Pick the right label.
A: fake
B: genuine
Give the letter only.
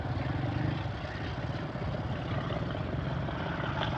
B